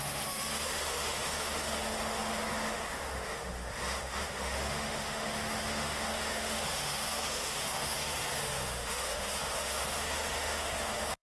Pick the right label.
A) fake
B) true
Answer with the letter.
A